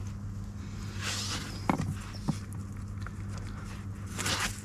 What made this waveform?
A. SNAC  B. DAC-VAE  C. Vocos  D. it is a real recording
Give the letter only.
D